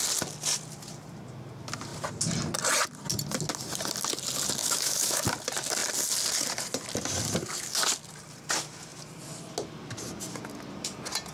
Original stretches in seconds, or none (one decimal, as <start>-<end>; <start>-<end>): 0.0-4.6; 5.2-11.3